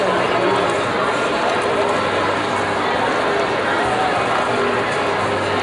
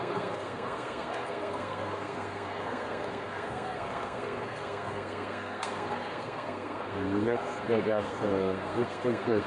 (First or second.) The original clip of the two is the first